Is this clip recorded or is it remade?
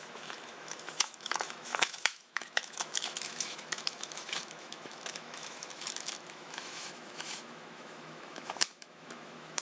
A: remade